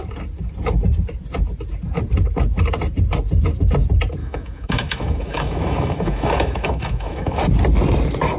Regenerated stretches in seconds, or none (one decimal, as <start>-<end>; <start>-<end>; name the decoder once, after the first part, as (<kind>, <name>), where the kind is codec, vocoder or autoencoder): 4.2-7.4 (autoencoder, DAC-VAE)